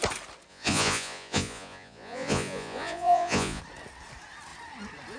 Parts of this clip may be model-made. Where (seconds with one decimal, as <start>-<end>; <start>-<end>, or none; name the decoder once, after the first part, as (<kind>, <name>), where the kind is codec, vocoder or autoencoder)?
0.5-3.6 (vocoder, Vocos)